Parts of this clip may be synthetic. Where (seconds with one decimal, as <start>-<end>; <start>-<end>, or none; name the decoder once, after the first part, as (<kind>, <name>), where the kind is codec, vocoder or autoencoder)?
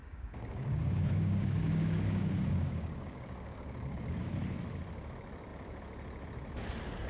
0.0-4.3 (codec, DAC)